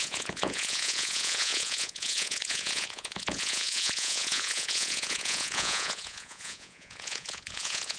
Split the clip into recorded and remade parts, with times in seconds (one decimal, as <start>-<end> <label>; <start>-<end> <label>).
0.0-8.0 remade